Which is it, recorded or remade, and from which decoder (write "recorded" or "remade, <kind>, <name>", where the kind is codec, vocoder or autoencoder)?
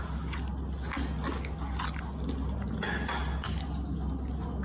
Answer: recorded